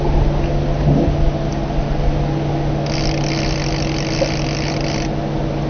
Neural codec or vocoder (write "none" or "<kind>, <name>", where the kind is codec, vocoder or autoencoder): none